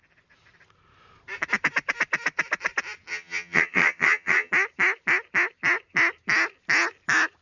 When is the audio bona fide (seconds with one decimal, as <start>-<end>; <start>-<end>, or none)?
0.0-3.1; 4.5-7.4